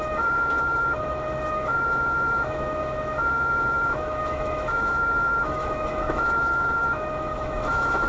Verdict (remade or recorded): remade